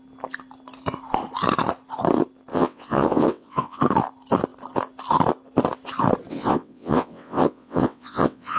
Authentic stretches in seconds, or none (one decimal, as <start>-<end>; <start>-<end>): 0.0-2.5; 3.8-6.3